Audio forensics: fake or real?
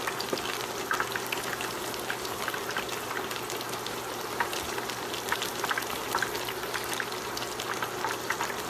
real